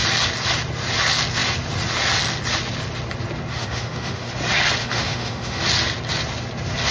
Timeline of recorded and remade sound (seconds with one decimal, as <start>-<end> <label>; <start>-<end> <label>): 0.0-3.5 recorded; 3.5-4.3 remade; 4.3-4.8 recorded; 4.8-5.6 remade; 5.6-6.9 recorded